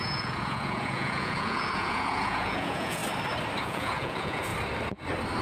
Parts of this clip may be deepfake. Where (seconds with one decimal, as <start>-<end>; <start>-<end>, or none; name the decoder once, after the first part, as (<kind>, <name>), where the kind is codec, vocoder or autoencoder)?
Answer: 0.0-3.0 (vocoder, Vocos); 3.6-4.5